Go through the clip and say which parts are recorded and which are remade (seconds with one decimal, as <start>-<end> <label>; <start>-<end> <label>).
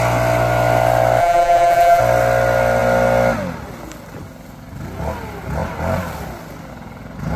0.0-1.2 recorded; 1.2-2.0 remade; 2.0-7.4 recorded